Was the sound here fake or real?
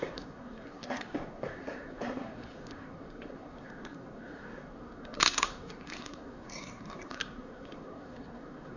fake